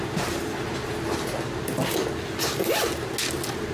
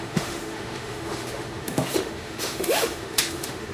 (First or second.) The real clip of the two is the first